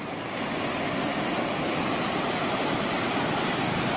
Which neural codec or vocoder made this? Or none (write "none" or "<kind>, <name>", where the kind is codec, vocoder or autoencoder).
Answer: none